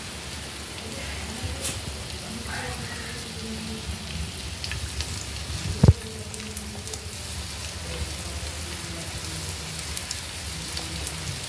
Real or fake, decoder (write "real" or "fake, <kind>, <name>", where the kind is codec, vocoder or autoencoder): real